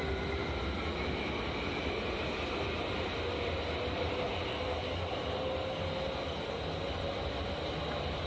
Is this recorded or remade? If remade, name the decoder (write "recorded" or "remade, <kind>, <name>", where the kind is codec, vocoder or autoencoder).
recorded